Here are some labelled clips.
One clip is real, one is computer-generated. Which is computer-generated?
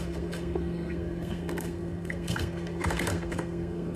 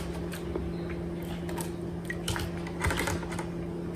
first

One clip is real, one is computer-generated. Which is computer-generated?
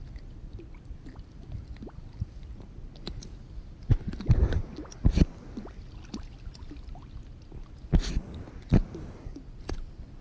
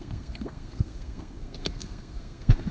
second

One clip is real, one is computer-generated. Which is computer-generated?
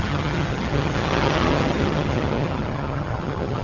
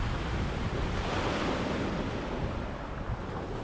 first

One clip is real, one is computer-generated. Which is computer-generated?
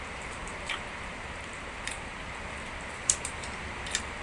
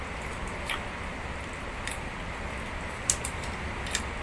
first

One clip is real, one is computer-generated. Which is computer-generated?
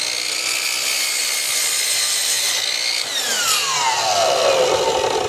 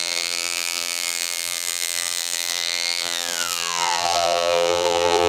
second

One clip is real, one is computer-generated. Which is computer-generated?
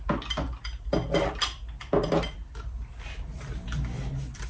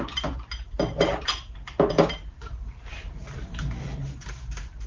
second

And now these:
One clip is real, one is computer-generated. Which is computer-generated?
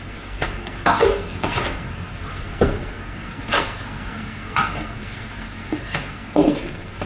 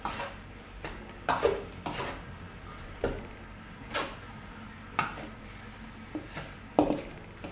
first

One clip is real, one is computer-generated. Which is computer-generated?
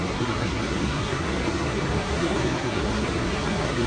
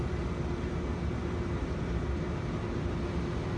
first